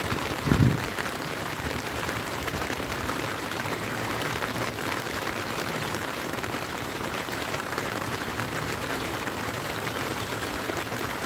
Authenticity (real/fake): fake